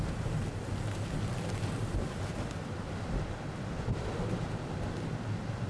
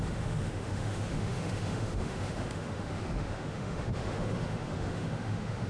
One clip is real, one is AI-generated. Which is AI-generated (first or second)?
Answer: second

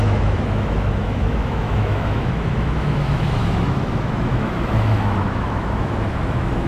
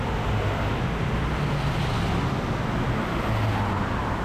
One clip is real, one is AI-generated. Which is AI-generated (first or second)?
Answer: first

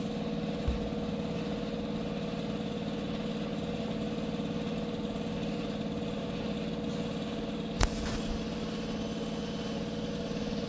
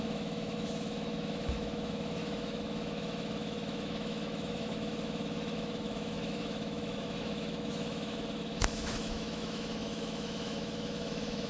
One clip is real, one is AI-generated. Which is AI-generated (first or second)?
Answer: second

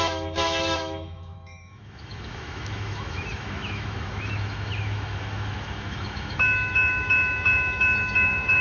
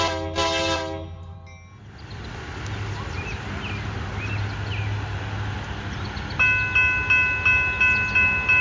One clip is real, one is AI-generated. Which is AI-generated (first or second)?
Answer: first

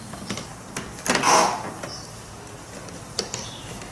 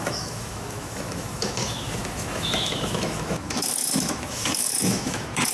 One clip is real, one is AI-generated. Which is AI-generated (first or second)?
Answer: second